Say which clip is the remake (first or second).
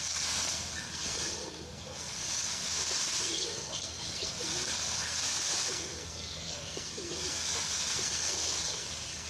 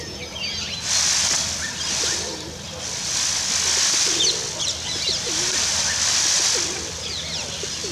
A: first